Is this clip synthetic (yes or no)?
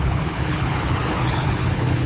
yes